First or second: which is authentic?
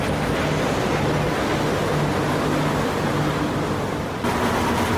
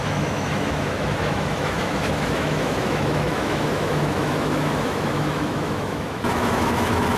first